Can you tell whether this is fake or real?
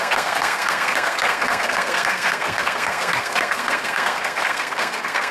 fake